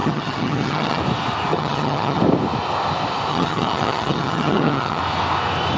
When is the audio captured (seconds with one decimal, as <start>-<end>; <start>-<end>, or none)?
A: 1.0-1.5; 2.2-3.3; 5.0-5.8